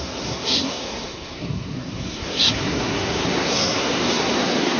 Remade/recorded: remade